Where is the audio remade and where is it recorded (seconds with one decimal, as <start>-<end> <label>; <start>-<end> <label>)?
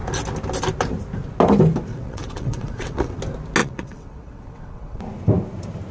0.0-1.9 recorded; 1.9-3.2 remade; 3.2-3.6 recorded; 3.6-5.0 remade; 5.0-5.9 recorded